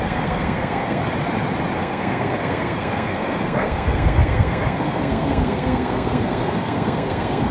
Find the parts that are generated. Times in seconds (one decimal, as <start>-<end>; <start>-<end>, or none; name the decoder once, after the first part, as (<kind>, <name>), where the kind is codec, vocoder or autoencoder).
0.0-1.0 (codec, SNAC); 1.8-7.5